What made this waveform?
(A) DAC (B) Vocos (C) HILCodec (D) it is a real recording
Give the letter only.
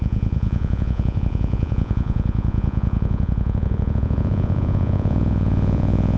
B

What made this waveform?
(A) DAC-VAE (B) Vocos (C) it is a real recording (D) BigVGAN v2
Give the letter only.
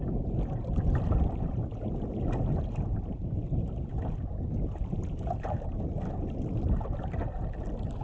C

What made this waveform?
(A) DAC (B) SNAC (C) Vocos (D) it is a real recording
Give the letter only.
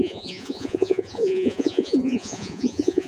C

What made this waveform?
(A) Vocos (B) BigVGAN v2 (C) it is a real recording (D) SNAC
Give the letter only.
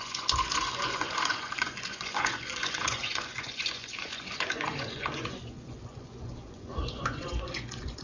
A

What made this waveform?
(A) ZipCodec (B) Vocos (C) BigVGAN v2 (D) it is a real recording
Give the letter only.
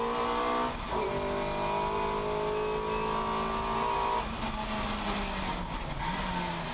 D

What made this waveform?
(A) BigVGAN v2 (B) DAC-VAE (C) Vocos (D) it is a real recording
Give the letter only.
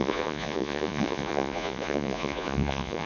C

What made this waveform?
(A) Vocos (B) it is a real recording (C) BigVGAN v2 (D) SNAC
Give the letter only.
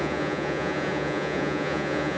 A